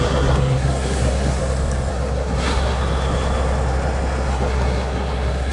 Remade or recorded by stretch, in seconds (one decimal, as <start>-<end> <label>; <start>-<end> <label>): 0.0-1.4 remade; 1.4-1.9 recorded; 1.9-2.8 remade; 2.8-4.3 recorded; 4.3-5.5 remade